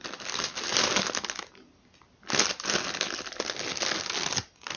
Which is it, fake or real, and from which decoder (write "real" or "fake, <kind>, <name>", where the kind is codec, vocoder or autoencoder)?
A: real